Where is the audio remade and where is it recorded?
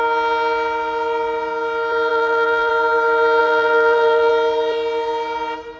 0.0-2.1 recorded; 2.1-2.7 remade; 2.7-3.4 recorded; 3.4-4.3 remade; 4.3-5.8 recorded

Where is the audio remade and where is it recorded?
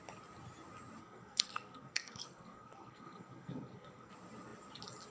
0.0-1.0 recorded; 1.0-4.1 remade; 4.1-5.1 recorded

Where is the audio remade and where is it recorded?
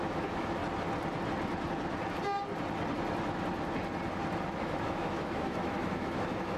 0.0-0.6 remade; 0.6-4.6 recorded; 4.6-6.6 remade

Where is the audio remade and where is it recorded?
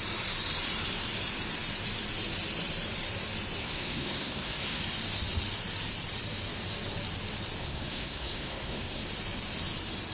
0.0-3.6 recorded; 3.6-4.8 remade; 4.8-7.6 recorded; 7.6-9.0 remade; 9.0-10.1 recorded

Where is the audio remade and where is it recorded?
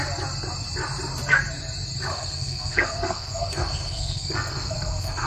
0.0-2.1 recorded; 2.1-5.3 remade